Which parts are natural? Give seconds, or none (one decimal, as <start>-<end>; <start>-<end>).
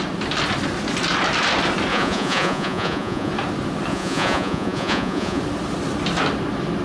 0.0-1.9; 3.3-3.9; 5.4-6.8